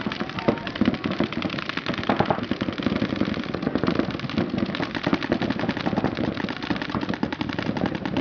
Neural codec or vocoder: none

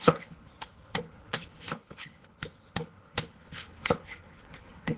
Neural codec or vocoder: codec, HILCodec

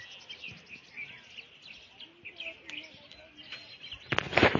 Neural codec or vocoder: none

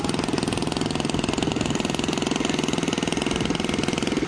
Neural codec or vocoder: none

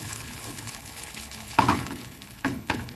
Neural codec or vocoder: codec, HILCodec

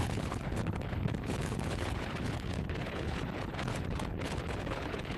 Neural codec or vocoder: codec, HILCodec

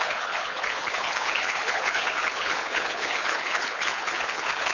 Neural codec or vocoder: codec, HILCodec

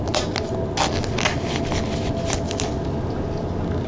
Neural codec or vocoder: none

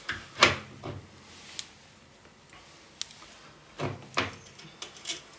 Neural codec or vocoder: none